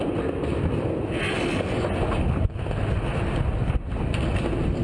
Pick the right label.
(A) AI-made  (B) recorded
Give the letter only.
B